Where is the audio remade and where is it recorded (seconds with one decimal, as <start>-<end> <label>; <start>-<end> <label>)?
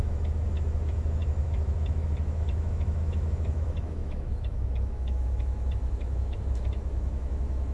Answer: 0.0-7.7 remade